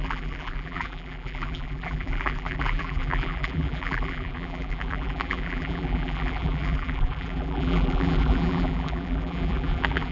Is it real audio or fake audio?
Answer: fake